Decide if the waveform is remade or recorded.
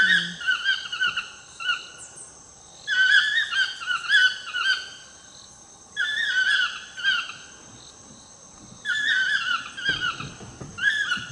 recorded